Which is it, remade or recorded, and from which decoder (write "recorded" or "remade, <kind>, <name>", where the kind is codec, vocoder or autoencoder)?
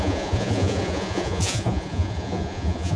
remade, vocoder, Vocos